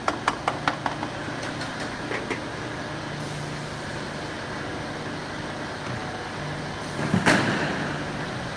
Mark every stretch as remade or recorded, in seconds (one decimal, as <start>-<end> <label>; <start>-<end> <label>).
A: 0.0-8.6 recorded